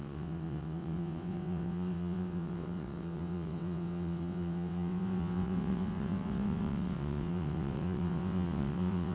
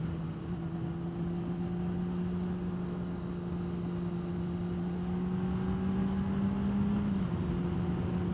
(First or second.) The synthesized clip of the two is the first